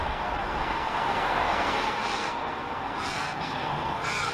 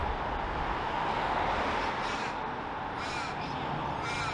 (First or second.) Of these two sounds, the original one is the second